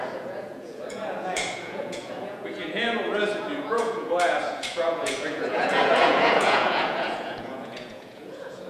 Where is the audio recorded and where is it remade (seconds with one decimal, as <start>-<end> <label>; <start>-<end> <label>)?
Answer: 0.0-8.7 remade